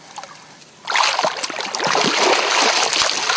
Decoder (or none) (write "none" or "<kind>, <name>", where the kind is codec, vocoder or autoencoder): none